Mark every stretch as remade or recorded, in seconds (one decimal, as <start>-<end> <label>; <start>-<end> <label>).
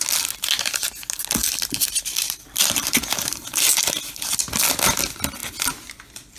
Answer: 0.0-1.4 recorded; 1.4-3.0 remade; 3.0-6.4 recorded